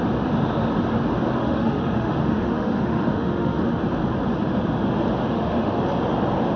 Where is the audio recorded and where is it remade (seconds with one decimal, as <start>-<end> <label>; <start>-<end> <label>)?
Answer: 0.0-1.4 recorded; 1.4-3.8 remade; 3.8-5.3 recorded; 5.3-5.8 remade; 5.8-6.6 recorded